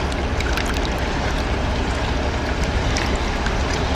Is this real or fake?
real